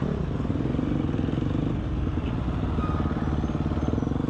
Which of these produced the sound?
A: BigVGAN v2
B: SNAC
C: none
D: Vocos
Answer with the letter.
C